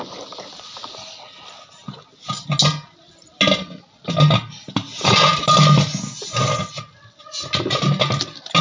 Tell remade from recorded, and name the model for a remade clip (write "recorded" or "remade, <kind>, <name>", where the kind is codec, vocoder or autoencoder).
recorded